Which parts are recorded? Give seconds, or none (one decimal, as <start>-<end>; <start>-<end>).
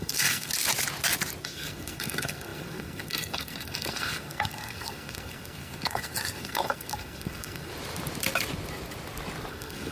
0.5-1.4; 7.7-9.5